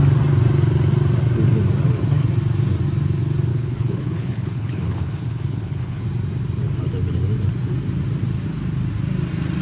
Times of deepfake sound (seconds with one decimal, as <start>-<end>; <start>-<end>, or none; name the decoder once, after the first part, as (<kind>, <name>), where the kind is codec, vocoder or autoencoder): 3.5-6.0 (codec, HILCodec)